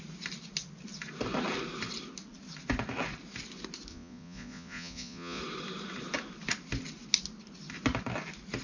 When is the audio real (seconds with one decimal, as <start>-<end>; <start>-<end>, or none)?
0.0-3.9; 5.4-8.6